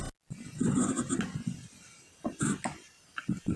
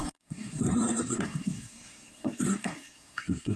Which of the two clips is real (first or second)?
first